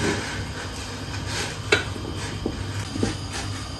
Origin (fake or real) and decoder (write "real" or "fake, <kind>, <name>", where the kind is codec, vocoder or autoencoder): real